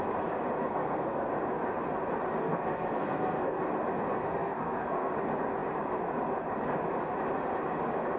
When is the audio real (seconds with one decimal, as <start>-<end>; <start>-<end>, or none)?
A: 0.0-0.6; 1.3-2.4; 3.6-4.3; 5.1-8.2